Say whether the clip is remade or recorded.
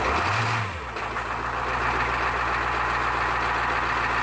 recorded